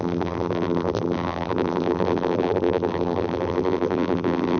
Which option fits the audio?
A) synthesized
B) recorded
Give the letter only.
A